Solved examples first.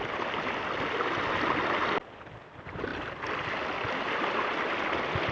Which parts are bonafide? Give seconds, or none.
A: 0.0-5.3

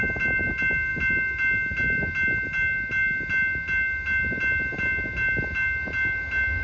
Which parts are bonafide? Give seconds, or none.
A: 0.0-6.6

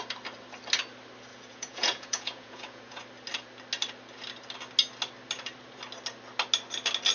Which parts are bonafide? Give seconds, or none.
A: 0.0-1.3; 3.0-7.1

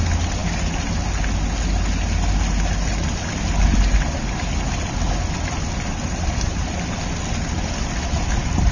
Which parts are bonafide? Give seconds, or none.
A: 0.0-8.7

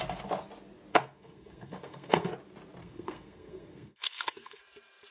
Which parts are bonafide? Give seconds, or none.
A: 0.0-0.9; 2.3-2.8; 4.6-5.1

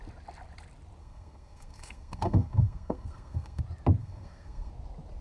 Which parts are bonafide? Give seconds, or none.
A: 0.0-1.0; 3.6-4.0; 4.7-5.2

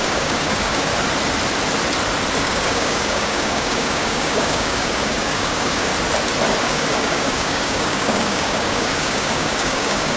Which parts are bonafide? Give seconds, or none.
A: 0.9-2.4; 5.9-6.6